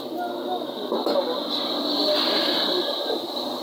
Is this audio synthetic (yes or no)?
no